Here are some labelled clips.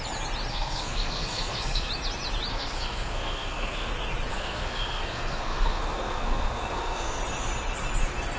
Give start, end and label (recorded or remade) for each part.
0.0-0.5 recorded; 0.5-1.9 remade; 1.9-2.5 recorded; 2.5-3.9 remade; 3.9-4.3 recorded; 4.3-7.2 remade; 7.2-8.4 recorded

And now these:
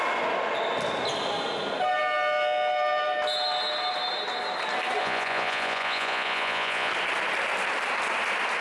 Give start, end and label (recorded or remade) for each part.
0.0-5.0 recorded; 5.0-6.9 remade; 6.9-8.6 recorded

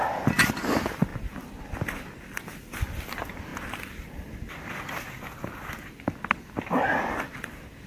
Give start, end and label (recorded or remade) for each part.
0.0-7.9 recorded

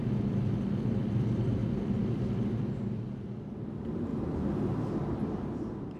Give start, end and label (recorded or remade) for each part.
0.0-4.1 remade; 4.1-5.5 recorded; 5.5-6.0 remade

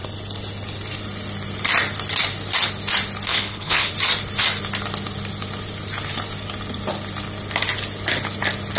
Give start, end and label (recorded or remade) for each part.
0.0-3.3 recorded; 3.3-3.9 remade; 3.9-8.8 recorded